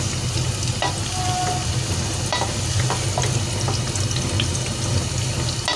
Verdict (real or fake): real